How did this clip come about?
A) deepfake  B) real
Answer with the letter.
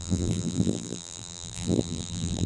A